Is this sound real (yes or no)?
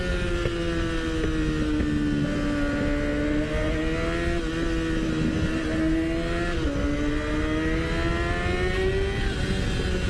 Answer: yes